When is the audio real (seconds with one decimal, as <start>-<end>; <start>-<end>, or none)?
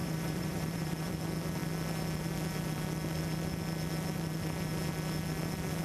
1.1-5.8